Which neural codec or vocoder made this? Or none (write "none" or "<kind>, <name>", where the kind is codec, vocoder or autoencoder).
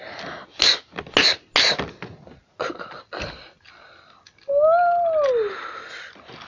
none